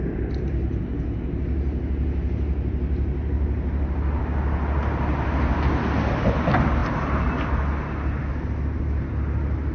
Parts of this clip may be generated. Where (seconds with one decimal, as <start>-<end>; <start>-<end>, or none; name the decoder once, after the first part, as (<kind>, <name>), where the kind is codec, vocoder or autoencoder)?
none